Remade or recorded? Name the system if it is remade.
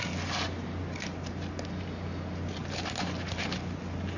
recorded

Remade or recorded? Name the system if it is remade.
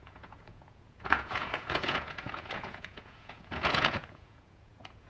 remade, vocoder, Vocos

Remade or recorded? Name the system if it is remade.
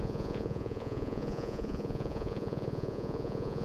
remade, vocoder, Vocos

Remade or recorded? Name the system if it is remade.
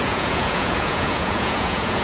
remade, vocoder, Vocos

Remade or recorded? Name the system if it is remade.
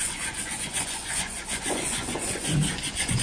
remade, vocoder, Vocos